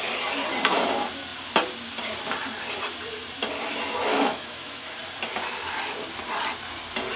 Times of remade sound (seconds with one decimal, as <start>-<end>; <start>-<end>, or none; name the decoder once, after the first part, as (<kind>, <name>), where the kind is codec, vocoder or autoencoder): 4.1-4.9 (autoencoder, DAC-VAE)